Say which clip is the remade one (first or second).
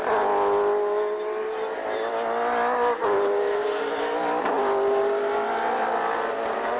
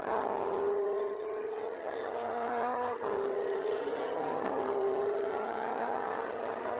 second